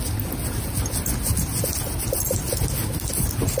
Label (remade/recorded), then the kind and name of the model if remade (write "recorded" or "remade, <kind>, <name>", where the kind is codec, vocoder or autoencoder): recorded